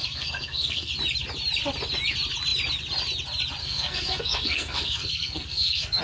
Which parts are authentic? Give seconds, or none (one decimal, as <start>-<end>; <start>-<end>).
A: 0.9-3.6